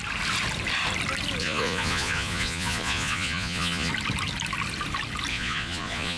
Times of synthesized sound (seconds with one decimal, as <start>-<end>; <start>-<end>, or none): 1.4-3.9; 5.3-6.2